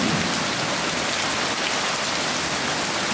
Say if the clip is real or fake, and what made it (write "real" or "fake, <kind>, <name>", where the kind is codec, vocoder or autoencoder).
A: real